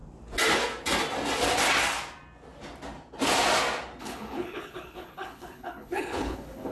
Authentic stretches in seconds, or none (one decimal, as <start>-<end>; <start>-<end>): 0.0-4.0

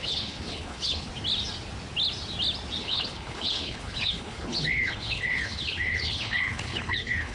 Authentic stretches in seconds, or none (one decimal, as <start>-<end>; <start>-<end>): 1.1-2.8

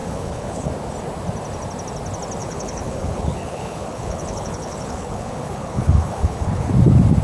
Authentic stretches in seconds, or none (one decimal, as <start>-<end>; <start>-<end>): 0.7-2.4; 6.7-7.2